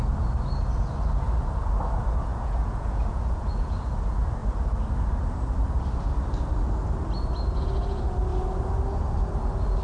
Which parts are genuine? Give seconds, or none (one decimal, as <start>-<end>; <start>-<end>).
0.0-2.3; 3.9-9.8